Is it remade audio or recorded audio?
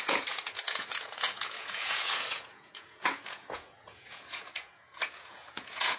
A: remade